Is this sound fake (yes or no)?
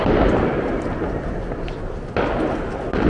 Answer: no